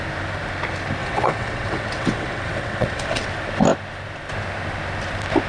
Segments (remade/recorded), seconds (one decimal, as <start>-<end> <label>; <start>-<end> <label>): 0.0-1.0 recorded; 1.0-3.3 remade; 3.3-5.5 recorded